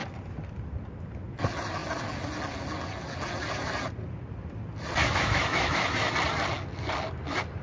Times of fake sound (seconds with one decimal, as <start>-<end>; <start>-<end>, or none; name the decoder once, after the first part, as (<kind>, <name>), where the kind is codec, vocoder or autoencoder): 5.0-6.1 (autoencoder, DAC-VAE)

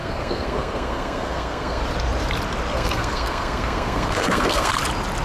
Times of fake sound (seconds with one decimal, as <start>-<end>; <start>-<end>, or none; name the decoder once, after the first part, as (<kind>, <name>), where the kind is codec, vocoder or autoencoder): 0.0-1.8 (codec, SNAC); 2.7-4.7

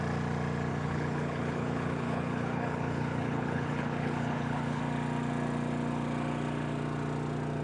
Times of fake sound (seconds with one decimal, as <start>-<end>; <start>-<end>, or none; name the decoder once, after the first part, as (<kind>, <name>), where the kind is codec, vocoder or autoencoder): 0.7-4.8 (codec, HILCodec)

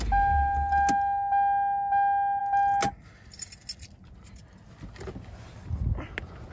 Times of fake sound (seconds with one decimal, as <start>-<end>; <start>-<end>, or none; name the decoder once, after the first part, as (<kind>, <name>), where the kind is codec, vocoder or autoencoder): none

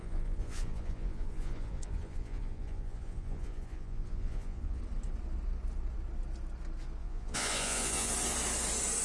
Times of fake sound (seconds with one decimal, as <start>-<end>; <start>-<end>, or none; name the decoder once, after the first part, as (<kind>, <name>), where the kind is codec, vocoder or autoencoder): 0.0-4.8 (vocoder, Vocos); 7.0-8.1

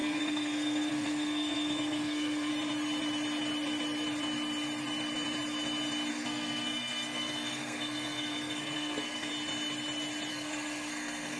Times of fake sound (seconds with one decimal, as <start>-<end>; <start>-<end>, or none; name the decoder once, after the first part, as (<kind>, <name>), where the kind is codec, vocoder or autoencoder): 0.0-2.5 (codec, SNAC); 6.1-9.3; 10.3-11.4

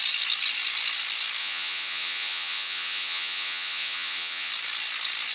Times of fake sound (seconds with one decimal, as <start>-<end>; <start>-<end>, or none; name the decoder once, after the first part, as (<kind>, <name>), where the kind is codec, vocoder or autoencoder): 1.4-4.5 (vocoder, Vocos)

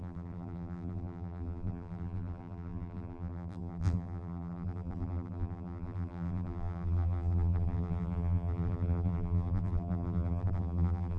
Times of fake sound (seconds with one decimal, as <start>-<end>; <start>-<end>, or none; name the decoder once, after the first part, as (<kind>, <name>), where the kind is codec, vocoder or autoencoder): 0.0-11.2 (vocoder, BigVGAN v2)